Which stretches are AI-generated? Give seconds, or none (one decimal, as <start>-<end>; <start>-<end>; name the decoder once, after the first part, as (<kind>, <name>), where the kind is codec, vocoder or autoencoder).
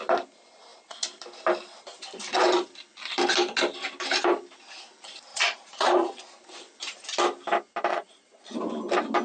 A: 5.3-6.2 (vocoder, Vocos); 7.9-8.6